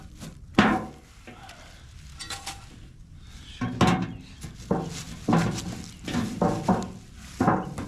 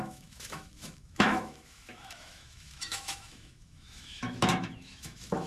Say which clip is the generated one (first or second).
second